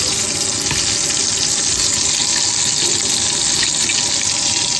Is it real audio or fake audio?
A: real